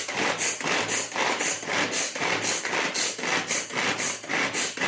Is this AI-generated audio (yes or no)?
no